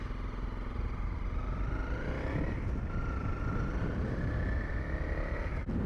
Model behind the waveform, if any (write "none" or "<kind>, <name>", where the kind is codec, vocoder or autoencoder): none